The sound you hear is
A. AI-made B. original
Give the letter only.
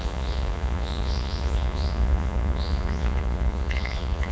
A